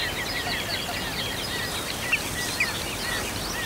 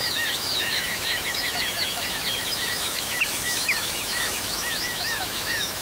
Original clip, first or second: first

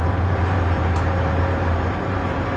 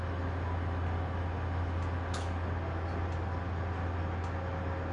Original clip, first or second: second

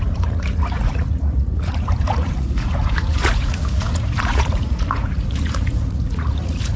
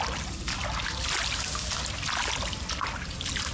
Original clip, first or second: second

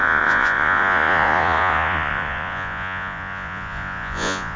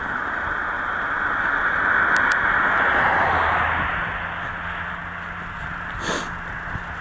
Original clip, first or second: second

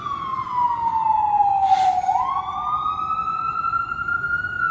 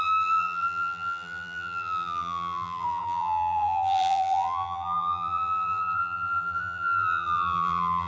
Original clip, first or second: first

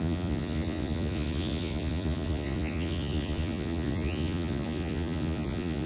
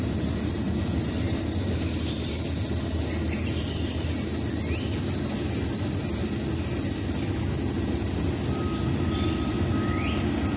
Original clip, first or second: second